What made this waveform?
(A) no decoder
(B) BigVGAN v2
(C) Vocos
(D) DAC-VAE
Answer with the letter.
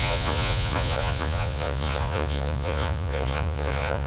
C